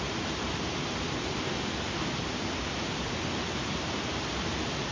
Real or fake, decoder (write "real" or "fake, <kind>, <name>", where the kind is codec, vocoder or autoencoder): real